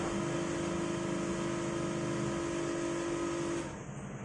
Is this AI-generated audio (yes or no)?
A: no